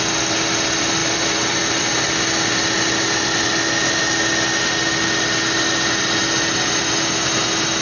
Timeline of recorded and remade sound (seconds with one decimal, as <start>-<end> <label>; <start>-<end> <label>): 0.0-1.0 recorded; 1.0-1.8 remade; 1.8-7.8 recorded